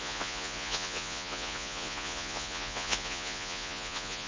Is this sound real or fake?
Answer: fake